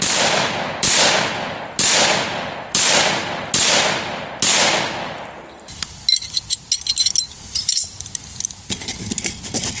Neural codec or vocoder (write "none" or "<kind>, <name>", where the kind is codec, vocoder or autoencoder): none